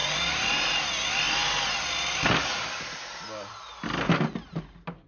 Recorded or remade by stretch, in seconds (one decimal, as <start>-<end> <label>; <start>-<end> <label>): 0.0-0.8 remade; 0.8-5.1 recorded